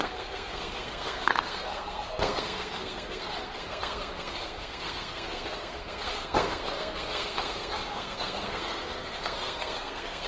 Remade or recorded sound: remade